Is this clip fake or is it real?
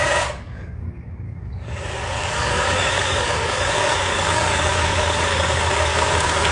fake